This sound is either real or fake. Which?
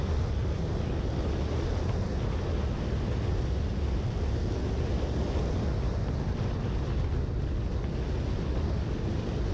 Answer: real